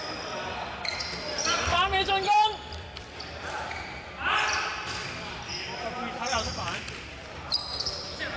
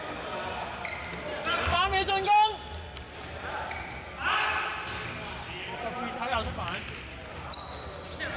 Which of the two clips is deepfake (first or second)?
first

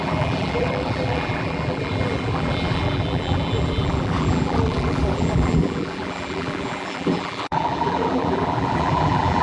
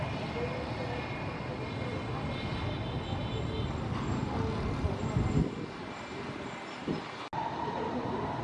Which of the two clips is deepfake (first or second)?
first